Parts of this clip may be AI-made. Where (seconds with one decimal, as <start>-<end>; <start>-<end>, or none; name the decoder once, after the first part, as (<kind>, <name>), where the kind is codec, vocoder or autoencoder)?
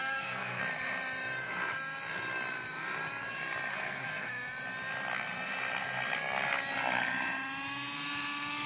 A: 0.0-0.6 (codec, SNAC); 3.7-4.3